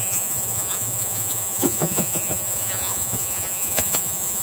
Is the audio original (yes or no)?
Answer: no